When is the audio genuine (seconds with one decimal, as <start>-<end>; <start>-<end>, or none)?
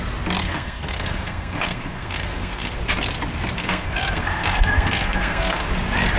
0.0-0.4; 2.8-3.6; 5.7-6.2